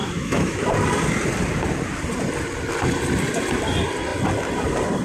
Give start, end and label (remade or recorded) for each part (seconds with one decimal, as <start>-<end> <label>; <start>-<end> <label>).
0.0-0.7 remade; 0.7-5.0 recorded